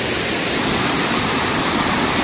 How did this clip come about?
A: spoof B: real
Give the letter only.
B